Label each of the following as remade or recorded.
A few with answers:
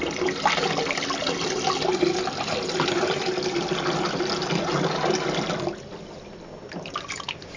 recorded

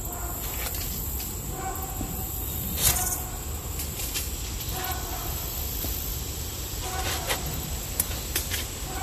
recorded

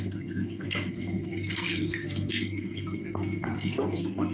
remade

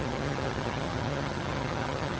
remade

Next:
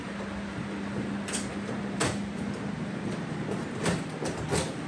recorded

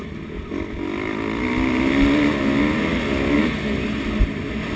recorded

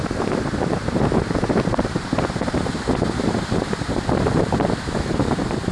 remade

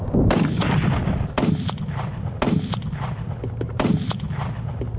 recorded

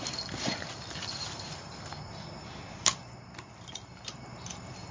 recorded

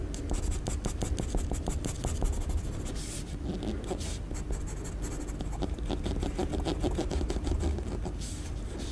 recorded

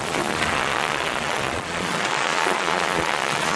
remade